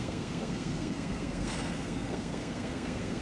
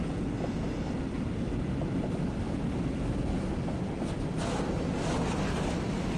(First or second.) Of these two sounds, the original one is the second